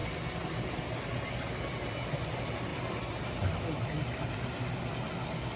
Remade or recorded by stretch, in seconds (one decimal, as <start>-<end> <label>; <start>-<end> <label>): 0.0-5.6 recorded